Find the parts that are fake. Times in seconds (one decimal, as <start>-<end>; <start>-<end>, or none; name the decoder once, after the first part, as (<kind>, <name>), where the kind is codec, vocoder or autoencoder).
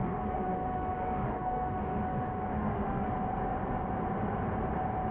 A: 0.0-3.1 (autoencoder, DAC-VAE)